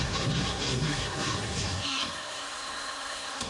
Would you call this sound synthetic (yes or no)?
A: yes